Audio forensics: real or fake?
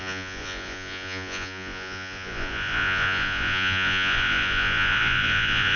fake